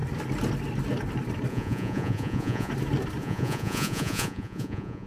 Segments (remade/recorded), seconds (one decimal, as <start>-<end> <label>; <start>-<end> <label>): 0.0-1.5 recorded; 1.5-2.7 remade; 2.7-3.2 recorded; 3.2-5.1 remade